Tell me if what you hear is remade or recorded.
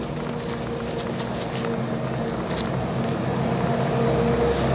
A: recorded